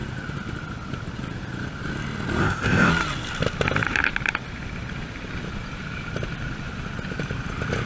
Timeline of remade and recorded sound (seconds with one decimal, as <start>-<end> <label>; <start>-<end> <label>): 0.0-2.4 recorded; 2.4-2.9 remade; 2.9-7.9 recorded